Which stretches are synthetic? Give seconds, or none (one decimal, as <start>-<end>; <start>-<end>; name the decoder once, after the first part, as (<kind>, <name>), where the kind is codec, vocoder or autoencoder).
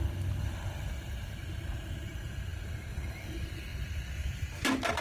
none